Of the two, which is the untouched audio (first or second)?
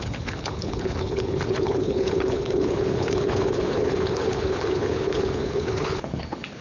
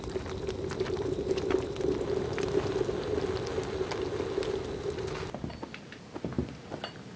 second